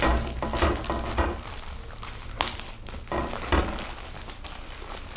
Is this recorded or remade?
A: recorded